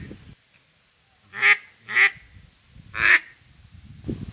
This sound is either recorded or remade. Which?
recorded